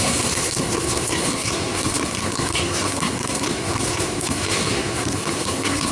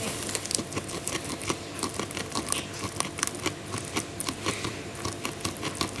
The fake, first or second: first